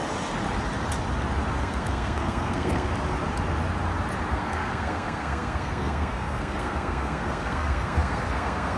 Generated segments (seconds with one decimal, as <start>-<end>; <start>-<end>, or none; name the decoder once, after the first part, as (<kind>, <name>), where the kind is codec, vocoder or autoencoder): 1.6-2.9 (codec, SNAC); 4.3-8.8